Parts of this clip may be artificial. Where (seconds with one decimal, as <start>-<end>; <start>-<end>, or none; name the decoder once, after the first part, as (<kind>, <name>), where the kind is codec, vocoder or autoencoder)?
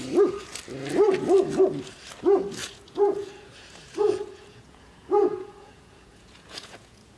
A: 2.6-7.2 (vocoder, Vocos)